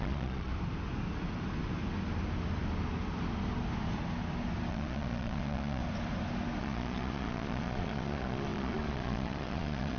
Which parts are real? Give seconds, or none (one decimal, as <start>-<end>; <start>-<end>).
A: 0.5-4.7; 5.8-6.6